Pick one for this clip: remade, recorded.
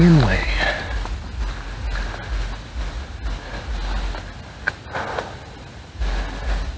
recorded